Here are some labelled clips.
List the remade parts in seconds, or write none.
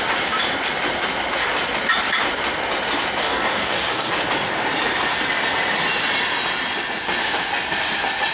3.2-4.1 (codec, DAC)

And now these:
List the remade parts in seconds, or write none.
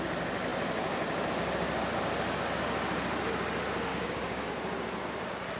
3.9-4.5 (codec, DAC)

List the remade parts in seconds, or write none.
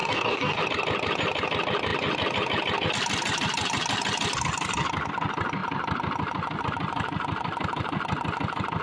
0.0-0.6 (codec, DAC)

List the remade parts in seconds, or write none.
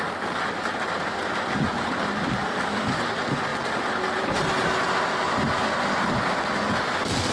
2.4-3.0 (codec, DAC)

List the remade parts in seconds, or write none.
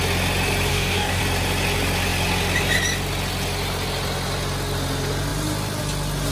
0.7-1.2 (codec, DAC)